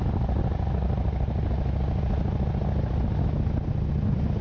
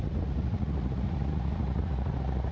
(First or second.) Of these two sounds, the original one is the first